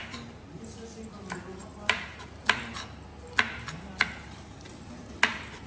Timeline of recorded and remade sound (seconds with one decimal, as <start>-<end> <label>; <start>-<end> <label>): 0.0-5.7 recorded

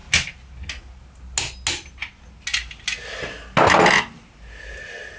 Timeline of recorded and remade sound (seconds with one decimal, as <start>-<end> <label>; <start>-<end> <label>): 0.0-5.2 recorded

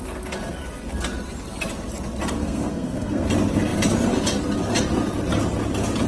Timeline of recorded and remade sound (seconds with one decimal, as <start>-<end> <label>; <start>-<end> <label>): 0.0-2.4 recorded; 2.4-3.3 remade; 3.3-6.1 recorded

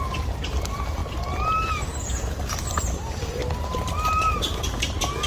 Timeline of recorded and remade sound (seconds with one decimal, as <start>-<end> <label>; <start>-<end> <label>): 0.0-1.0 remade; 1.0-2.0 recorded; 2.0-3.4 remade; 3.4-4.0 recorded; 4.0-5.3 remade